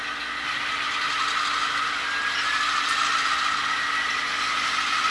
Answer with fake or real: real